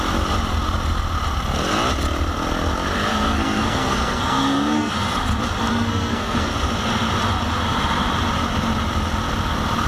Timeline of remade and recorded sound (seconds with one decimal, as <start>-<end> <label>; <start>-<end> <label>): 0.0-3.1 recorded; 3.1-4.9 remade; 4.9-5.7 recorded; 5.7-6.5 remade; 6.5-9.9 recorded